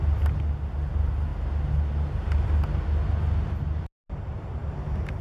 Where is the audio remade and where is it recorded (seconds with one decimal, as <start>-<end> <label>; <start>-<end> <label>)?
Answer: 0.0-5.2 recorded